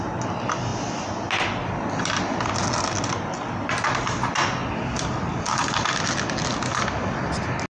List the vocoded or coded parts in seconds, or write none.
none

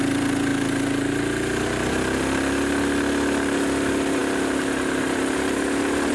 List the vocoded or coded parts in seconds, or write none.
none